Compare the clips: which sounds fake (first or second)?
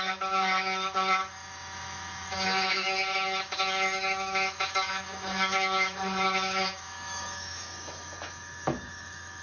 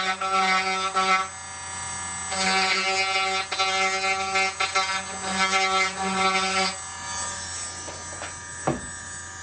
first